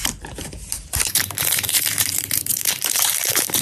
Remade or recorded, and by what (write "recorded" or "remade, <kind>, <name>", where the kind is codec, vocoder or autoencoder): remade, vocoder, BigVGAN v2